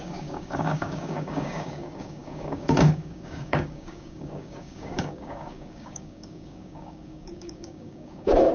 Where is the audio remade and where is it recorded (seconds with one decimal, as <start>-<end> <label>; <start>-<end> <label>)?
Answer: 0.0-8.5 remade

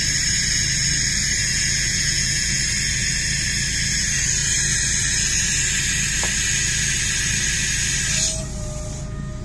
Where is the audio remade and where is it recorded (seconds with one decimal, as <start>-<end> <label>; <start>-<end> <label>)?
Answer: 0.0-1.4 recorded; 1.4-2.6 remade; 2.6-9.4 recorded